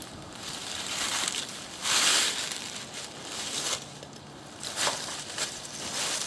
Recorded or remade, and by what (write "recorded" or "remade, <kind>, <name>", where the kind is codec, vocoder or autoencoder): recorded